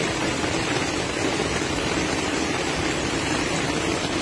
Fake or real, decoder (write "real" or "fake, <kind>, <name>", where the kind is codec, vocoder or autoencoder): real